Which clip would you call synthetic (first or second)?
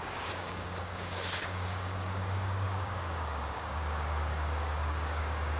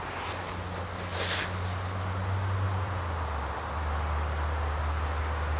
first